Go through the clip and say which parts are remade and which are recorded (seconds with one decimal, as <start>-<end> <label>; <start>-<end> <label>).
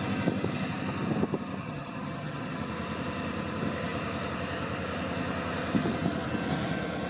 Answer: 0.0-1.6 recorded; 1.6-2.6 remade; 2.6-7.1 recorded